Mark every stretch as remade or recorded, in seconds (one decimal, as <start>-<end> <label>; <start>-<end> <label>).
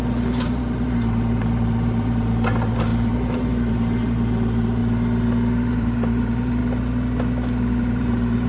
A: 0.0-4.8 remade; 4.8-5.7 recorded; 5.7-6.6 remade; 6.6-7.8 recorded; 7.8-8.5 remade